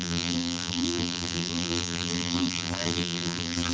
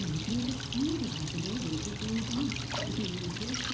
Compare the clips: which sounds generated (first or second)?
first